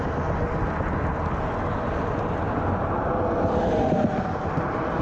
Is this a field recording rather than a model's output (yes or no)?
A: yes